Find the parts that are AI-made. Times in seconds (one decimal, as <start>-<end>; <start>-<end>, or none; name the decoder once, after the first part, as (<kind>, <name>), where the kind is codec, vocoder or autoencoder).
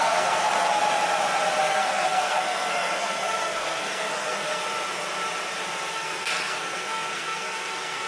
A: 0.0-0.8 (codec, SNAC); 1.6-4.6; 5.9-8.1